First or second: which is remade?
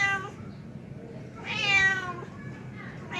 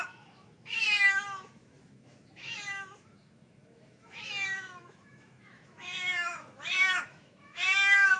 second